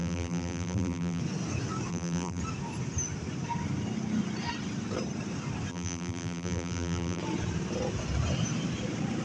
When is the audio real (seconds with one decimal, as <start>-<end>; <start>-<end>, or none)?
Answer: 1.2-1.9; 2.4-5.7; 7.2-9.2